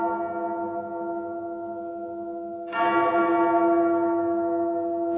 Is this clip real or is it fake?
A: real